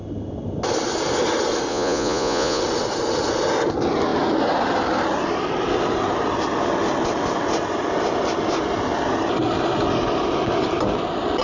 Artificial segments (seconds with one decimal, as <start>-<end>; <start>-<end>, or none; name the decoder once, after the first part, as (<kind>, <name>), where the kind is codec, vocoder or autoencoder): 1.7-2.6 (vocoder, Vocos)